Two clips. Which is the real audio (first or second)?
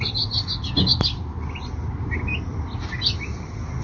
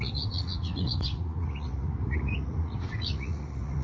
first